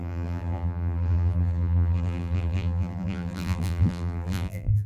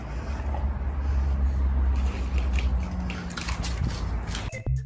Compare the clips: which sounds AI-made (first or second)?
first